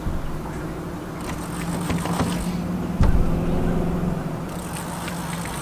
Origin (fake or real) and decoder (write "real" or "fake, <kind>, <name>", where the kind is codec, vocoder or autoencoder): real